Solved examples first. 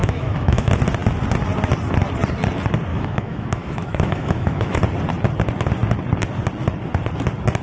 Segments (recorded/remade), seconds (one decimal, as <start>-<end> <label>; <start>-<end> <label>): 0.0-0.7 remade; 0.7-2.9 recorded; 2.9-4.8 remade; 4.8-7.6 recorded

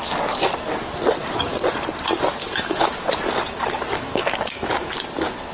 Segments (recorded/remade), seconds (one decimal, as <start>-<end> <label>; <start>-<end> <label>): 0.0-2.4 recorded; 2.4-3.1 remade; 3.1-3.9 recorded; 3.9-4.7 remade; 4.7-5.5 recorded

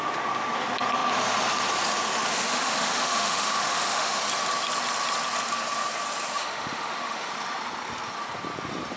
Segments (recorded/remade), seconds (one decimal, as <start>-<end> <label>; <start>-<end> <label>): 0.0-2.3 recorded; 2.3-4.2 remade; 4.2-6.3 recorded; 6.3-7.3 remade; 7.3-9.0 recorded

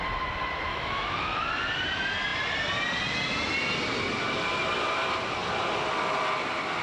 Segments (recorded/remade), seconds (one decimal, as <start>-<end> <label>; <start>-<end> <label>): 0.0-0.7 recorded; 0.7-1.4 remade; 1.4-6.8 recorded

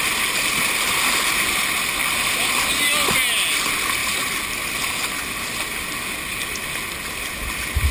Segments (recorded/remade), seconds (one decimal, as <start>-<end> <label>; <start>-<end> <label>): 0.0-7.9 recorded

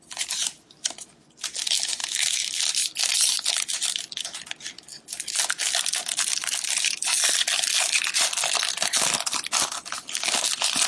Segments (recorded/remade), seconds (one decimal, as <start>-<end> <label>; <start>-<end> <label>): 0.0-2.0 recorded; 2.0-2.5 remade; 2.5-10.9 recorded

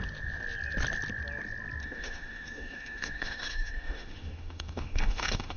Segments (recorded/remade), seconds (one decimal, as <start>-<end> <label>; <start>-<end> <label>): 0.0-1.8 recorded; 1.8-5.6 remade

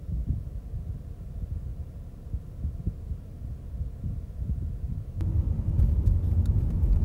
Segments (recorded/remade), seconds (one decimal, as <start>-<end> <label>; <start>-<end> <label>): 0.0-7.0 recorded